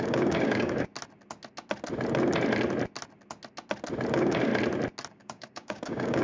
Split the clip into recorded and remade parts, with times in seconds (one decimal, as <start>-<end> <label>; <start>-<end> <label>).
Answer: 0.0-0.9 remade; 0.9-4.1 recorded; 4.1-4.5 remade; 4.5-5.1 recorded; 5.1-6.2 remade